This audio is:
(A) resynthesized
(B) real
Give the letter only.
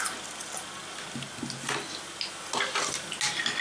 B